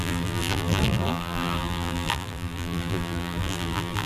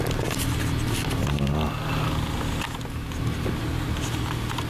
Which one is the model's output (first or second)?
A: first